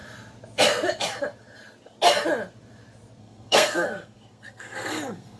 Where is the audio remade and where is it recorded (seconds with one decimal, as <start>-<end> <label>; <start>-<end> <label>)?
0.0-3.2 recorded; 3.2-5.4 remade